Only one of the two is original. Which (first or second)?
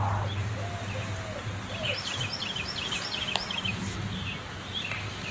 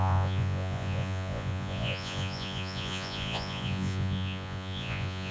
first